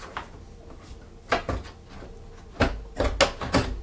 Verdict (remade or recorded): recorded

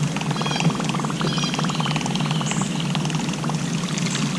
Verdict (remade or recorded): recorded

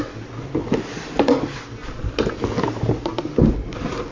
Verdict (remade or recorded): recorded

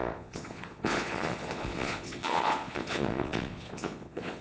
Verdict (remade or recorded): remade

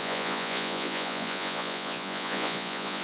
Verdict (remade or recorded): remade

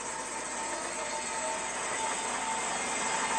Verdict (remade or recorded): recorded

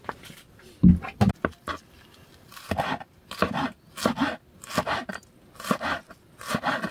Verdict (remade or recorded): recorded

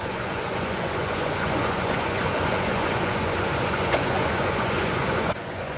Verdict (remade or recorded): remade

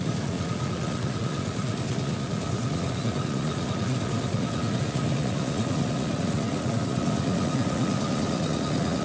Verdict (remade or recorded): remade